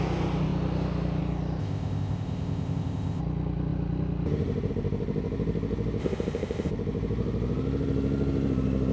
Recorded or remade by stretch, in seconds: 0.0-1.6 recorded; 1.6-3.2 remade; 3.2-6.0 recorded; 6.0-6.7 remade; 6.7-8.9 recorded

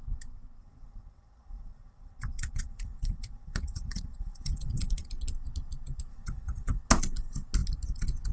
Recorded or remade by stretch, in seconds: 0.0-0.6 recorded; 0.6-5.1 remade; 5.1-6.1 recorded; 6.1-6.8 remade; 6.8-8.3 recorded

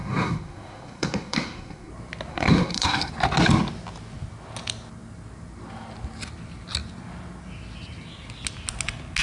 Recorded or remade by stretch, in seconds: 0.0-1.9 remade; 1.9-2.3 recorded; 2.3-3.1 remade; 3.1-9.2 recorded

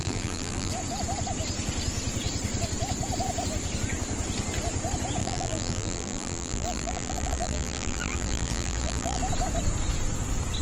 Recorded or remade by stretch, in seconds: 0.0-0.7 remade; 0.7-5.2 recorded; 5.2-9.2 remade; 9.2-10.6 recorded

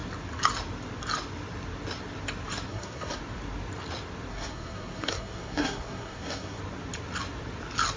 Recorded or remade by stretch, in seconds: 0.0-2.7 recorded; 2.7-3.2 remade; 3.2-4.3 recorded; 4.3-6.6 remade; 6.6-8.0 recorded